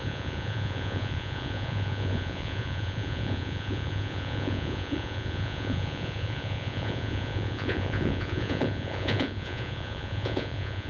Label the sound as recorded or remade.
remade